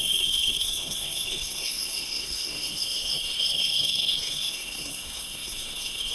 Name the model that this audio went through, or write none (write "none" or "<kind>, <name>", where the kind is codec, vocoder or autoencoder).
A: codec, SNAC